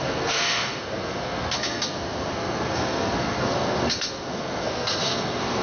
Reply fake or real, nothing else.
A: fake